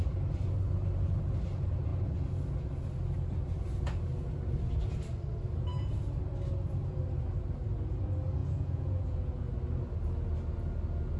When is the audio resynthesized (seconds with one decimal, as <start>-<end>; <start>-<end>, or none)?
8.4-9.5